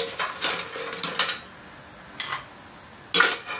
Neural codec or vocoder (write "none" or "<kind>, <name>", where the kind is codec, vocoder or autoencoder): none